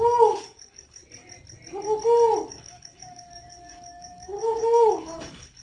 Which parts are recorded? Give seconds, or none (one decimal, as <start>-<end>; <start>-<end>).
1.0-2.5